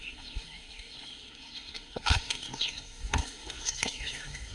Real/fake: fake